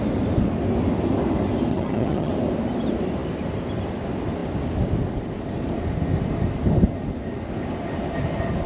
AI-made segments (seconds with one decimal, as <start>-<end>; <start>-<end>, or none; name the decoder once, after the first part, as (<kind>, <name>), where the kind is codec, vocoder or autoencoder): 1.7-2.3 (vocoder, HiFi-GAN)